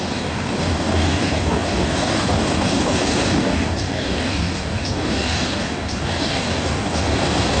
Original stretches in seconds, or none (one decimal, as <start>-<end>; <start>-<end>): none